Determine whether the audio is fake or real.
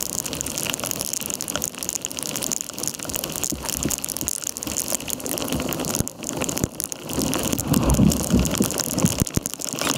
real